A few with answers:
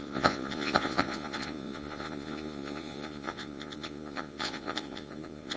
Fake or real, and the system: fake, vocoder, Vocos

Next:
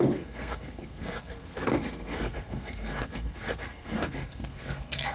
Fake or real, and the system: fake, codec, SNAC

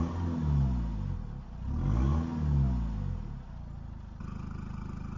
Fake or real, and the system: real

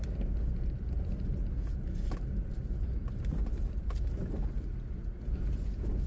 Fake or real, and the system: real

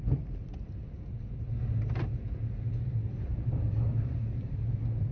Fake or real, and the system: fake, vocoder, BigVGAN v2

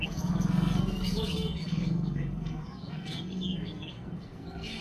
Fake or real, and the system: fake, codec, SNAC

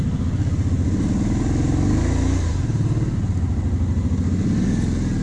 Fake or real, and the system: real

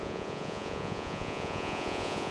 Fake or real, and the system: fake, vocoder, Vocos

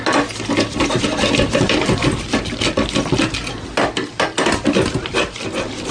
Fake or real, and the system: real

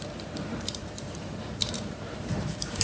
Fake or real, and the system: fake, vocoder, BigVGAN v2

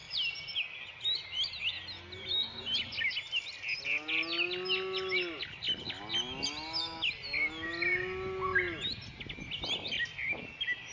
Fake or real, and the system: real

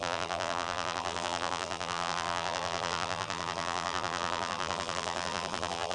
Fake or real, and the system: fake, vocoder, BigVGAN v2